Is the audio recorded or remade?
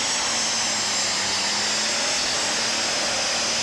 recorded